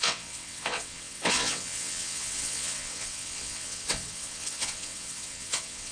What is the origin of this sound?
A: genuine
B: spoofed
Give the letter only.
B